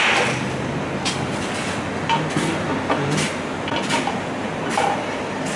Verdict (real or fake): real